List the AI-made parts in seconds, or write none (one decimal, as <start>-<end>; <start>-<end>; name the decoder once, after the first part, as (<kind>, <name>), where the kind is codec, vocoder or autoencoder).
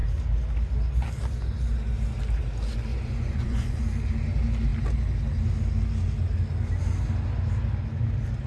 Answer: 2.9-3.8 (vocoder, Vocos)